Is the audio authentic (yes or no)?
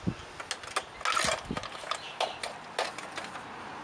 yes